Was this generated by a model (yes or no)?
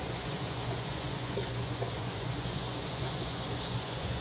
yes